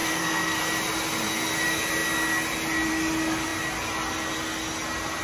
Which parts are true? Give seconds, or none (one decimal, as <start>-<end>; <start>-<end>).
0.6-5.2